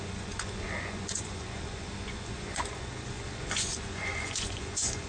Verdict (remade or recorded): remade